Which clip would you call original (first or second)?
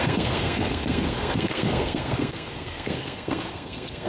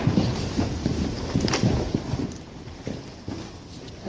second